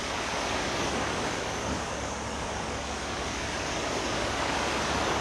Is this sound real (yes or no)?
no